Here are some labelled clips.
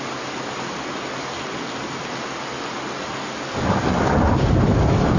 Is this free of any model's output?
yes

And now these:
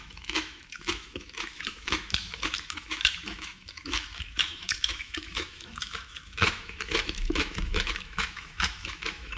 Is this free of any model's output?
no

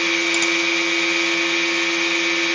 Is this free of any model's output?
yes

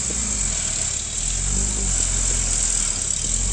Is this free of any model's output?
yes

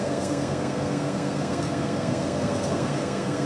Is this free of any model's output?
no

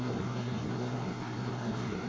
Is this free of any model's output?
no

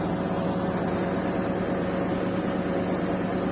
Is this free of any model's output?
yes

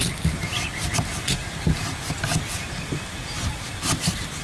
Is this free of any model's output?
yes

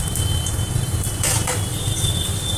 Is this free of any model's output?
no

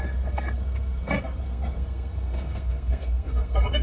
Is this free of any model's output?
no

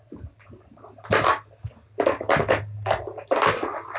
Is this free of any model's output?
yes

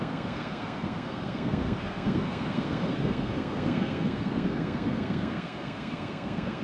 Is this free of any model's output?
no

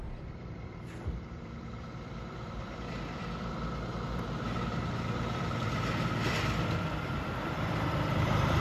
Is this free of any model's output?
no